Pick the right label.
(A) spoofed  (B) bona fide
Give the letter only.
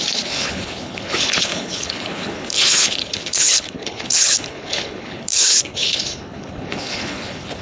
A